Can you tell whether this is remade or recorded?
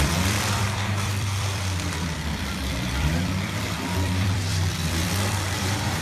remade